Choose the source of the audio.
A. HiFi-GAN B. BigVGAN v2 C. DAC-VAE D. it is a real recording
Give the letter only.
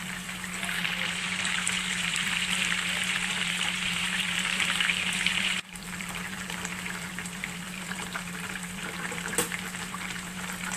B